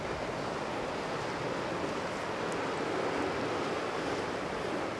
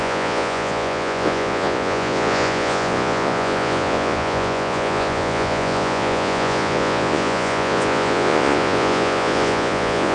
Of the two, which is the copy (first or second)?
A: second